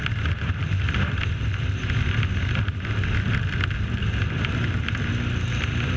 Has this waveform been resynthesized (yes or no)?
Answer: no